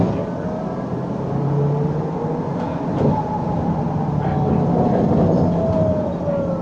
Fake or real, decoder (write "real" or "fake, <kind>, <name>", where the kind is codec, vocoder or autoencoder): real